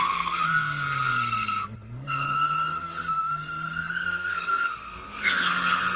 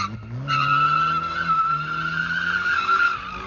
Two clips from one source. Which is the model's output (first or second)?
first